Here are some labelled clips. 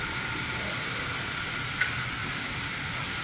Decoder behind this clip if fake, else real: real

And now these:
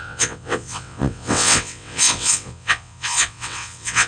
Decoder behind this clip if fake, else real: fake, vocoder, WaveNeXt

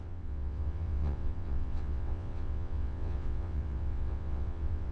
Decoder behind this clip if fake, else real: fake, vocoder, WaveNeXt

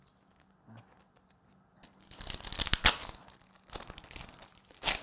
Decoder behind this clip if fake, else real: real